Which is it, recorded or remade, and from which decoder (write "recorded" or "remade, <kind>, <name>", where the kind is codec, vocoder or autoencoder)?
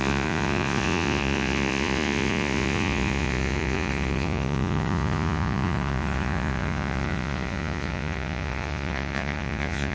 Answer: remade, vocoder, Vocos